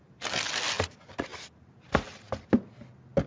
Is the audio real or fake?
real